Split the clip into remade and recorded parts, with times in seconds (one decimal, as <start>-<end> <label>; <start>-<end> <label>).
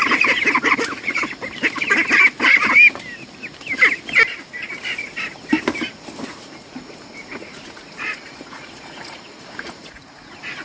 0.0-0.5 recorded; 0.5-1.2 remade; 1.2-6.4 recorded; 6.4-10.6 remade